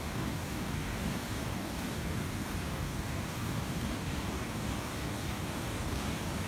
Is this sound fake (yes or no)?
yes